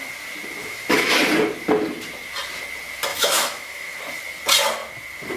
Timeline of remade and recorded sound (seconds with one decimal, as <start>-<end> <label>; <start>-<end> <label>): 0.0-0.6 recorded; 0.6-1.1 remade; 1.1-3.1 recorded; 3.1-4.0 remade; 4.0-5.4 recorded